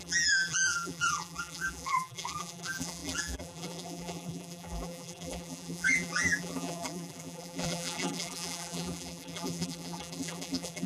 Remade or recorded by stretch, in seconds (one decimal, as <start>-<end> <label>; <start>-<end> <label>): 0.0-10.9 remade